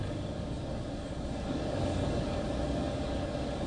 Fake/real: fake